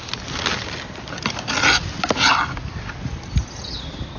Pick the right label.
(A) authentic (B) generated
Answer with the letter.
A